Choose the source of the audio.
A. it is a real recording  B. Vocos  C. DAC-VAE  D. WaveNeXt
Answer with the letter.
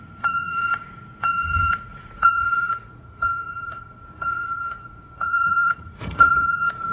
B